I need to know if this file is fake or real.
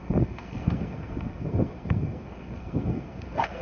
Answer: fake